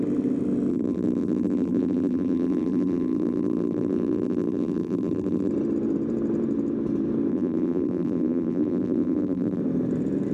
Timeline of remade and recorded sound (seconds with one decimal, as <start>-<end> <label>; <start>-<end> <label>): 0.0-0.7 recorded; 0.7-5.5 remade; 5.5-7.3 recorded; 7.3-9.6 remade; 9.6-10.3 recorded